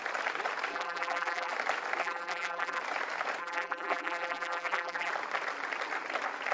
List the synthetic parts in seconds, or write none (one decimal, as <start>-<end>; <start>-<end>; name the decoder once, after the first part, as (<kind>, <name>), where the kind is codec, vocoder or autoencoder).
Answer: 0.7-1.5 (vocoder, BigVGAN v2); 2.0-2.8; 3.4-5.1